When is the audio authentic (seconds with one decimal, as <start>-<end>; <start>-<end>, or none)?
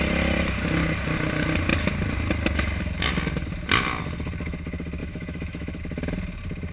0.0-5.0; 5.8-6.7